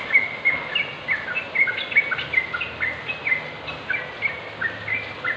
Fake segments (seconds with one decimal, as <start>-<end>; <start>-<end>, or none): none